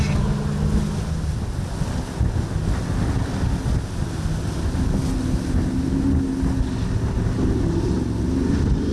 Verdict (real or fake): real